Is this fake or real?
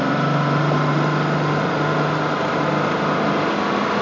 real